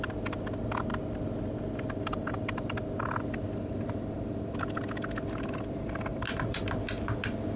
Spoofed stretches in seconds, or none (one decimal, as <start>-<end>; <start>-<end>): 6.1-6.6